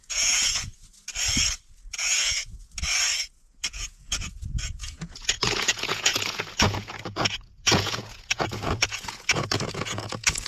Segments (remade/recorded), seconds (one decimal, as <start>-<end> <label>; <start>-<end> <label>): 0.0-0.7 remade; 0.7-1.9 recorded; 1.9-2.4 remade; 2.4-3.2 recorded; 3.2-10.5 remade